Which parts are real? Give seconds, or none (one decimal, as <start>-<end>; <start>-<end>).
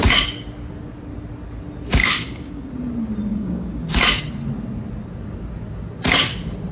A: 0.0-2.0; 2.7-3.3; 4.2-6.7